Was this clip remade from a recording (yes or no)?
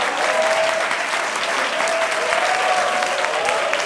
no